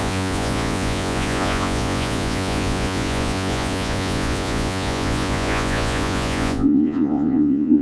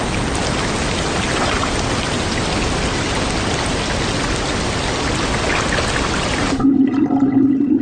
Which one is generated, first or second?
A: first